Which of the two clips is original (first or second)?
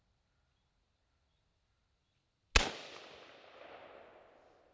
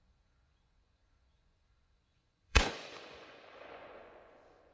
first